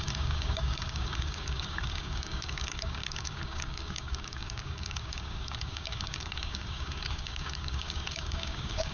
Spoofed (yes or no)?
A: yes